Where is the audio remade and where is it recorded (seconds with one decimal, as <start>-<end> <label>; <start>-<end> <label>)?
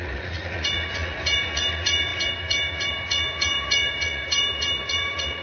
0.0-5.4 remade